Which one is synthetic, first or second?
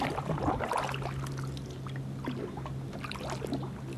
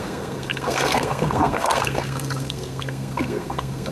second